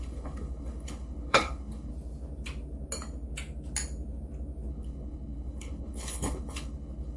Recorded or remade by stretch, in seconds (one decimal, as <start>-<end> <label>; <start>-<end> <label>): 0.0-1.9 remade; 1.9-4.7 recorded; 4.7-7.2 remade